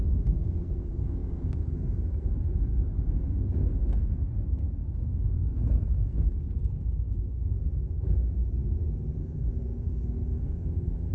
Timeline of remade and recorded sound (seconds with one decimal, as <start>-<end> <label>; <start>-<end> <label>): 0.0-8.4 remade; 8.4-9.2 recorded; 9.2-11.1 remade